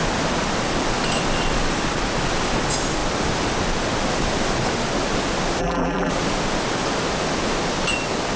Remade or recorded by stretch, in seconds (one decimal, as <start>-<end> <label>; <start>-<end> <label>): 0.0-5.6 recorded; 5.6-6.1 remade; 6.1-8.4 recorded